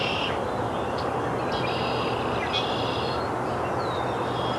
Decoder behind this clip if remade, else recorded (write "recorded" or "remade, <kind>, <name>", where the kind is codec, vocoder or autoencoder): recorded